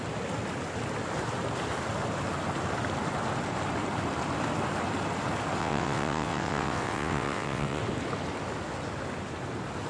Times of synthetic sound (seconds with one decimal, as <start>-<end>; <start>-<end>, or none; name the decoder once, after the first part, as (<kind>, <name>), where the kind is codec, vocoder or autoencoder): 5.6-7.8 (vocoder, WaveNeXt)